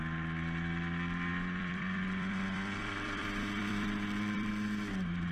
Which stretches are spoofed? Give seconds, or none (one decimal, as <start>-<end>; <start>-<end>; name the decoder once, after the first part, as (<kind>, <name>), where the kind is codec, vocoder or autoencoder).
1.3-4.5 (vocoder, BigVGAN v2)